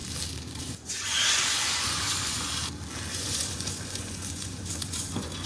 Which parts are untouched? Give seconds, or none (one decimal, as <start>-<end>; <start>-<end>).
0.0-0.6; 2.5-3.1